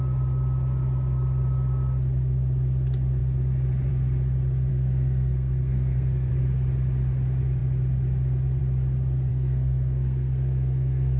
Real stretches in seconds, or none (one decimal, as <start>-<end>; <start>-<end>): 0.0-4.7; 6.3-9.3